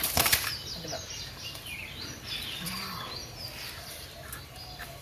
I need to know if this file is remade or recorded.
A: remade